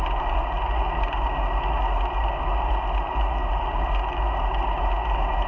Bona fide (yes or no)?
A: yes